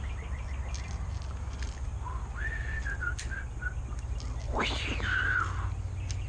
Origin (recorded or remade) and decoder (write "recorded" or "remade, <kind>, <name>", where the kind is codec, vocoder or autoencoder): recorded